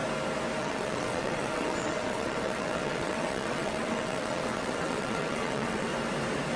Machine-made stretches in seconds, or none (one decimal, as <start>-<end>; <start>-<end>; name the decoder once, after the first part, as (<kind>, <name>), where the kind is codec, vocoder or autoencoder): 0.6-5.9 (vocoder, WaveNeXt)